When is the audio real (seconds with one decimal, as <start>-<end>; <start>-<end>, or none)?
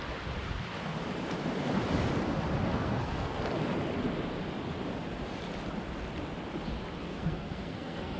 0.0-2.7; 3.4-7.0